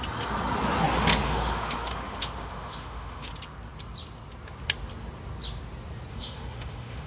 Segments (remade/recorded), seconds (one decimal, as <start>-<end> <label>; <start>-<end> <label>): 0.0-1.2 recorded; 1.2-3.3 remade; 3.3-6.1 recorded; 6.1-7.1 remade